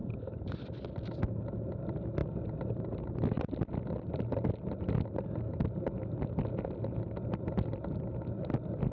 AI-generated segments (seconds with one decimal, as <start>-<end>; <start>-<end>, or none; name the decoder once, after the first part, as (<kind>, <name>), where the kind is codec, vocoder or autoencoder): none